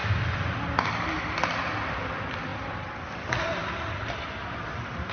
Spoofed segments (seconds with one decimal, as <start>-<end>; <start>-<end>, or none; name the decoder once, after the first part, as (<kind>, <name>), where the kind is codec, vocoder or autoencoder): none